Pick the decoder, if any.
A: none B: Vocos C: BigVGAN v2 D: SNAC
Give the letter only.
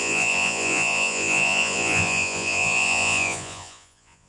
B